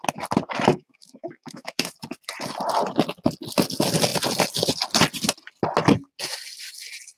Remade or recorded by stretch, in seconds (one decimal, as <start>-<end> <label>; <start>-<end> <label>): 0.0-0.7 recorded; 0.7-1.9 remade; 1.9-7.2 recorded